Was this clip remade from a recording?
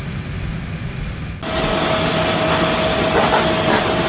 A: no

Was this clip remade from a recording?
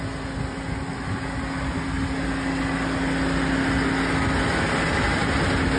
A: no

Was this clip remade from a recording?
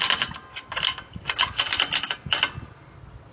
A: no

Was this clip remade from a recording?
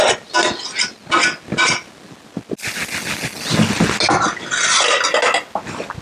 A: no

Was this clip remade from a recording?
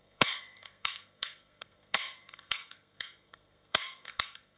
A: yes